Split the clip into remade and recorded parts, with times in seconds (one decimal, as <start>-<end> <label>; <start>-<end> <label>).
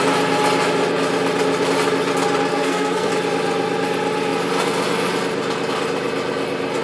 0.0-2.5 recorded; 2.5-3.1 remade; 3.1-6.8 recorded